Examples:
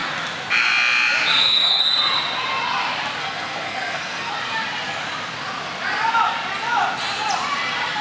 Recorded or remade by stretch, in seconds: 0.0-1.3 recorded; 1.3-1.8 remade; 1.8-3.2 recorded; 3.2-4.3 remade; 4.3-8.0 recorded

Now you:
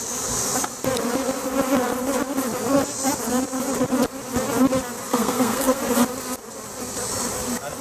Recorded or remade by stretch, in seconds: 0.0-5.1 recorded; 5.1-5.8 remade; 5.8-7.8 recorded

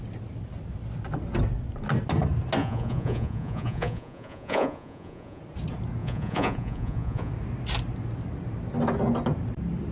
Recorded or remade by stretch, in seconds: 0.0-2.6 recorded; 2.6-5.4 remade; 5.4-6.0 recorded; 6.0-7.3 remade; 7.3-9.9 recorded

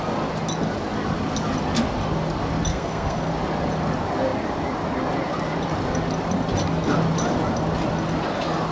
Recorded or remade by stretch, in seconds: 0.0-2.7 recorded; 2.7-3.3 remade; 3.3-8.7 recorded

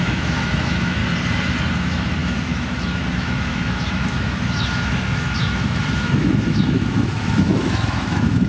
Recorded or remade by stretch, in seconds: 0.0-1.0 remade; 1.0-1.7 recorded; 1.7-8.5 remade

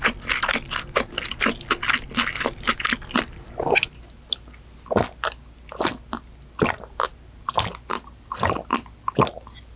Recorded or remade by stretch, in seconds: 0.0-9.8 recorded